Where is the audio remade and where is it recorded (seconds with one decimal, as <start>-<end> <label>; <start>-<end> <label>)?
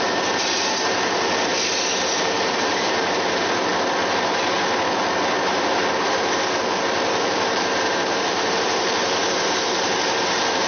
0.0-3.7 remade; 3.7-5.5 recorded; 5.5-10.7 remade